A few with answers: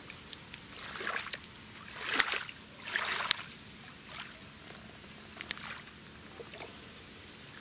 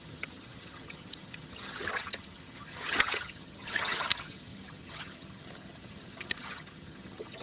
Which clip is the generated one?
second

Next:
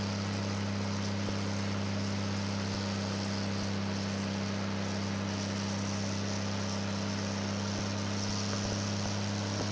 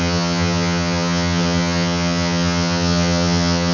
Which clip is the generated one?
second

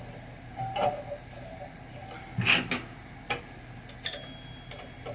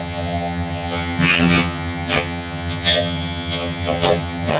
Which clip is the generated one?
second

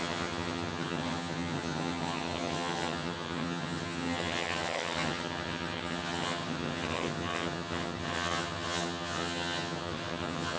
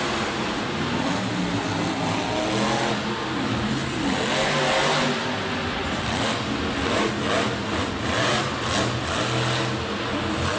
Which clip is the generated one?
first